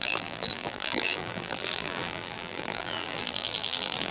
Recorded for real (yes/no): no